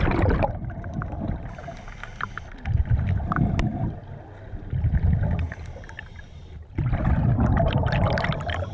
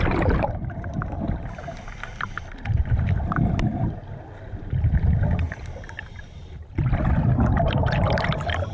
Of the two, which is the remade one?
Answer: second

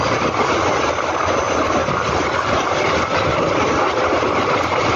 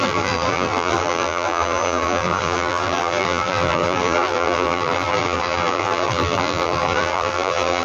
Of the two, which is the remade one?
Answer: second